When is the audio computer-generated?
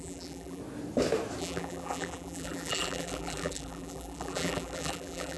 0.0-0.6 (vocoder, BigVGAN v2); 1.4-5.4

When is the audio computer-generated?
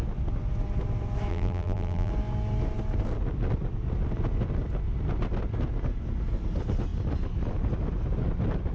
1.3-2.1 (vocoder, BigVGAN v2)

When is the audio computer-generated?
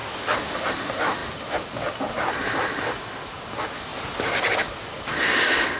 none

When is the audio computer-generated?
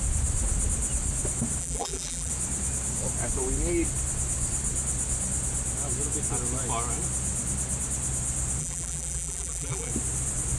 1.6-2.3 (vocoder, BigVGAN v2); 8.6-9.9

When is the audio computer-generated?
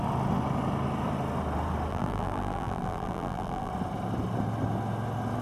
1.9-3.7 (vocoder, BigVGAN v2)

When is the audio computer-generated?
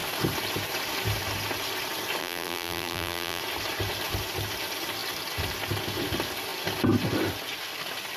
2.2-3.4 (vocoder, BigVGAN v2)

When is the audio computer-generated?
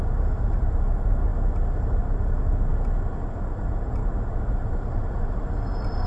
0.0-1.3 (vocoder, BigVGAN v2); 1.8-2.7; 3.4-6.1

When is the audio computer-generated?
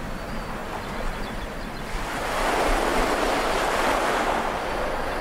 0.6-1.8 (vocoder, BigVGAN v2); 2.9-4.1